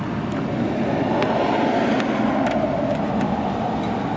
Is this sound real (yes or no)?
yes